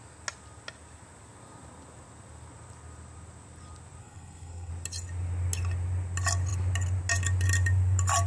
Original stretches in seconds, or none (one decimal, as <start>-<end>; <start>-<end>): 0.0-4.0; 4.7-8.3